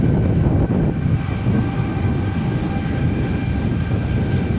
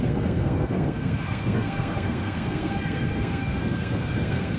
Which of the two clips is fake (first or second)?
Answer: second